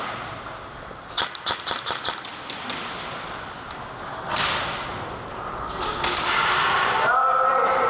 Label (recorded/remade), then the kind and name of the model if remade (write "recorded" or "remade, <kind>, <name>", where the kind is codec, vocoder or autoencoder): recorded